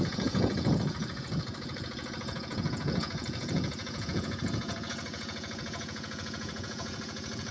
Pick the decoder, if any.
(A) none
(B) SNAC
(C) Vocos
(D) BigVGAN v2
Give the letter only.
C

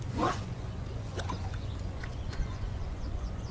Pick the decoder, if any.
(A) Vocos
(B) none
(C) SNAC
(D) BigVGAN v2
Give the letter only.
A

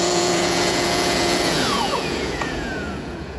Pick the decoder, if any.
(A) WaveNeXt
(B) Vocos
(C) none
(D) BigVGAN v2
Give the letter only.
B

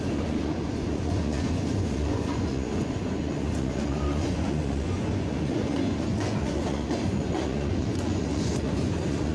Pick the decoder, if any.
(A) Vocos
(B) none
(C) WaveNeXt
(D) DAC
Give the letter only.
A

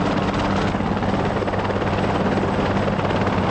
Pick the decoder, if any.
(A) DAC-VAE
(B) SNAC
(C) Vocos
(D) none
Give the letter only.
D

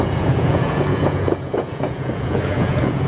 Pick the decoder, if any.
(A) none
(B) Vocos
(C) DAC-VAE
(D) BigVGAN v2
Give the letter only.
B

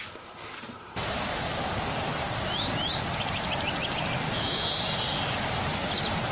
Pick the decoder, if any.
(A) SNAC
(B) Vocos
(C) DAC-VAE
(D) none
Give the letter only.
D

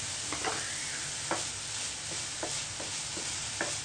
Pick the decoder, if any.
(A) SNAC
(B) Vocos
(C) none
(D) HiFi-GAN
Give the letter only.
C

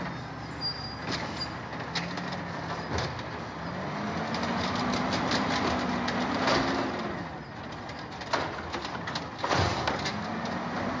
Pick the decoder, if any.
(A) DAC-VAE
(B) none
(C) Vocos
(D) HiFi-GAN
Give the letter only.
B